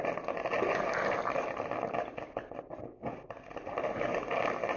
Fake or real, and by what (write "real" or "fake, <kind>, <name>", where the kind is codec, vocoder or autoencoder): real